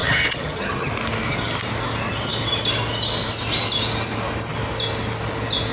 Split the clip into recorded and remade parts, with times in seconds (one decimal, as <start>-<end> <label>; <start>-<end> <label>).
0.0-0.9 remade; 0.9-5.7 recorded